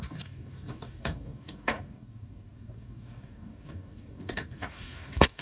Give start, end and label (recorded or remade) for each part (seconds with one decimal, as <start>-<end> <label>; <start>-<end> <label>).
0.0-5.4 remade